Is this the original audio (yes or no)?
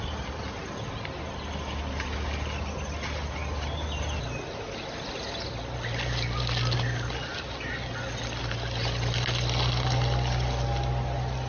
yes